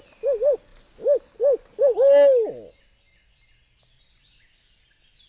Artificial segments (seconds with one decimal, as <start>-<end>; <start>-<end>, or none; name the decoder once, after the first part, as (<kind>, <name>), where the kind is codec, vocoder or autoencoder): none